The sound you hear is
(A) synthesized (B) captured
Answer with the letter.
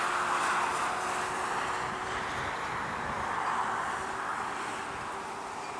B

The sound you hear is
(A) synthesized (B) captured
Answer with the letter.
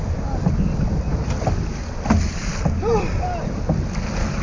B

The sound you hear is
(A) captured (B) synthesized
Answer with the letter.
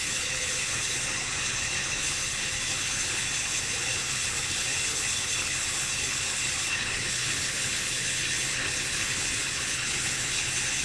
B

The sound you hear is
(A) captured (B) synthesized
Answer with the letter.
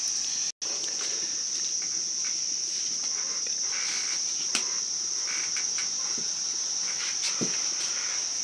A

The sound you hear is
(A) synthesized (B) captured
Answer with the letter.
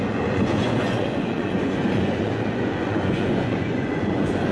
A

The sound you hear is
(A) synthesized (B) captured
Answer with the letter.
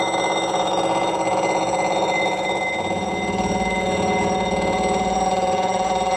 A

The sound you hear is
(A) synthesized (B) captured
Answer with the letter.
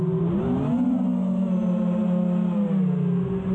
B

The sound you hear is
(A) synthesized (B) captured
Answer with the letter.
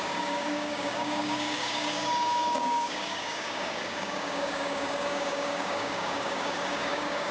A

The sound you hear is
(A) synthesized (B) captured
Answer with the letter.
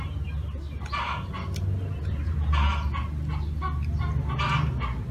B